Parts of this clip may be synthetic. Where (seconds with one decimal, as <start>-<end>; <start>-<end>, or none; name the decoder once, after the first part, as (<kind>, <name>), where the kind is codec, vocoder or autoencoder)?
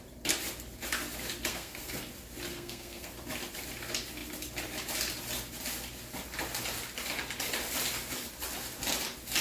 1.5-2.0 (codec, SNAC); 2.5-3.1